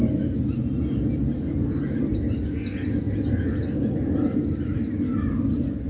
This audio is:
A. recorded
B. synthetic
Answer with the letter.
A